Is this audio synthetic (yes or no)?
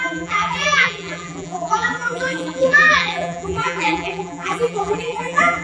yes